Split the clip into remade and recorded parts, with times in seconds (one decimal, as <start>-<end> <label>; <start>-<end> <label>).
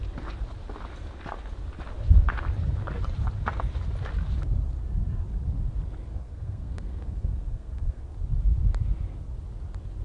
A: 0.0-6.1 recorded; 6.1-8.0 remade; 8.0-10.0 recorded